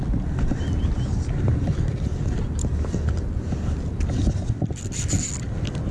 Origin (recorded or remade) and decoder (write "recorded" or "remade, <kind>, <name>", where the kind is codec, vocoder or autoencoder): recorded